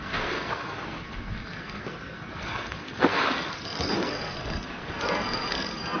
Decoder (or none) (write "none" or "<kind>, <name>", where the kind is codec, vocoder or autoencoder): codec, SNAC